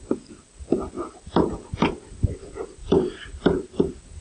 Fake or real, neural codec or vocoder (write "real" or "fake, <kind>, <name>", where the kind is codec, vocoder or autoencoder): real